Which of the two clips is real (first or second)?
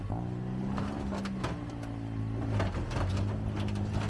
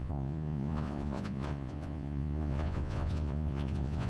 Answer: first